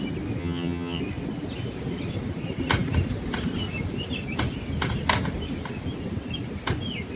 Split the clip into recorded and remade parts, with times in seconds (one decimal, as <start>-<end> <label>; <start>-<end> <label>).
0.0-0.4 recorded; 0.4-1.0 remade; 1.0-7.2 recorded